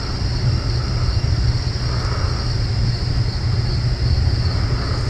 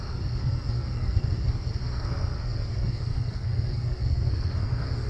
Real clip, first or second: first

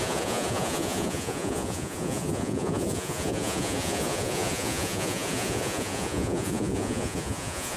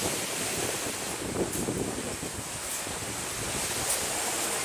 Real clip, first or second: second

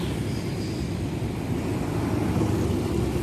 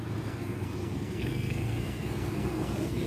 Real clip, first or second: first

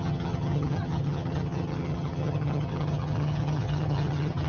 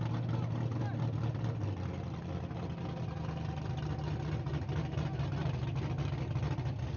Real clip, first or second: second